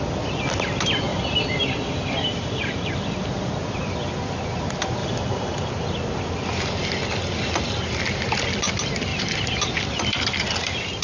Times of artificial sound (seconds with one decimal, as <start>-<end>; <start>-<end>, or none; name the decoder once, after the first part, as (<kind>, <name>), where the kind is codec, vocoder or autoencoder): 1.1-2.9 (vocoder, BigVGAN v2); 5.0-5.7; 9.1-9.7